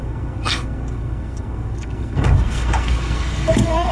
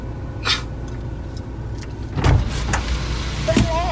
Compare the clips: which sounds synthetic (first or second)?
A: first